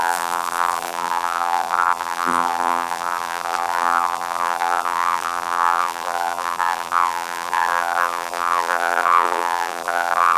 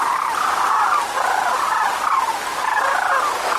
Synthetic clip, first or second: first